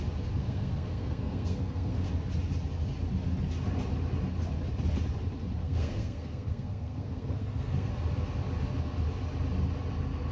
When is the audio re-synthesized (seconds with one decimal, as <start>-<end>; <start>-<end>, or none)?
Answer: 0.4-2.1; 5.6-7.9